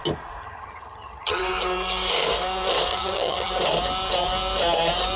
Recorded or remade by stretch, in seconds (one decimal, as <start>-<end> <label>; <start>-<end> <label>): 0.0-0.4 recorded; 0.4-1.4 remade; 1.4-2.9 recorded; 2.9-3.5 remade; 3.5-5.2 recorded